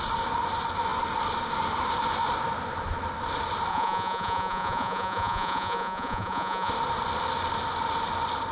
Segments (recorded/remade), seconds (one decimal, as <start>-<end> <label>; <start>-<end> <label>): 0.0-3.7 recorded; 3.7-6.7 remade; 6.7-8.5 recorded